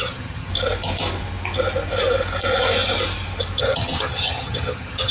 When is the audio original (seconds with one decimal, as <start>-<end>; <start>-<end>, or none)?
0.5-3.6